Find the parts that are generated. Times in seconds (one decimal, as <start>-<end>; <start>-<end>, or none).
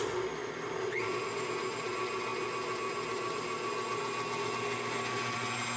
none